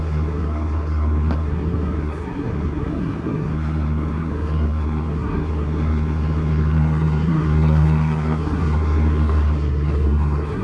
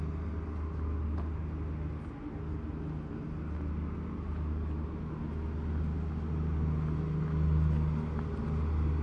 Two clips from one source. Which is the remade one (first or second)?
first